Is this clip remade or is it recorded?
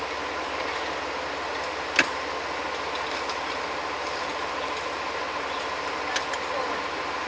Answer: recorded